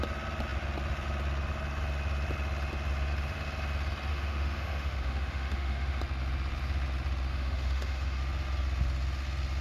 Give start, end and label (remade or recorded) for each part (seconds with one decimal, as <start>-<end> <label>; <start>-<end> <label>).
0.0-4.1 recorded; 4.1-6.0 remade; 6.0-7.3 recorded; 7.3-8.2 remade; 8.2-9.6 recorded